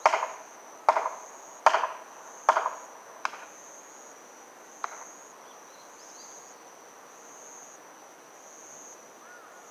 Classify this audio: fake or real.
real